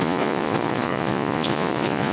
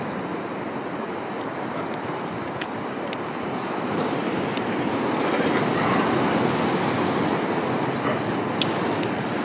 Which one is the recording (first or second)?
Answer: second